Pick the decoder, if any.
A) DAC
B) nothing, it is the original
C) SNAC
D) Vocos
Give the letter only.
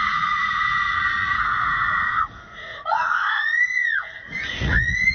D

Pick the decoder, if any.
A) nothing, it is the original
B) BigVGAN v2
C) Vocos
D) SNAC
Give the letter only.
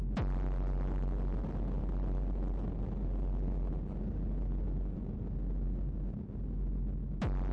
A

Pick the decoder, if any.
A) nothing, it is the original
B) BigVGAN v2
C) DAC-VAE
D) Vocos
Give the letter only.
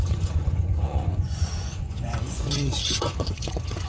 D